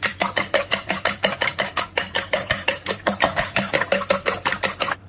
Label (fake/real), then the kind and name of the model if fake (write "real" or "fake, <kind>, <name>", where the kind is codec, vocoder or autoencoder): fake, vocoder, BigVGAN v2